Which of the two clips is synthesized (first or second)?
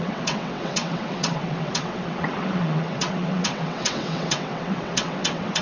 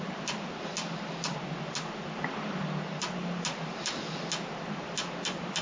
first